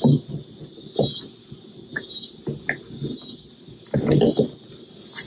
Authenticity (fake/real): real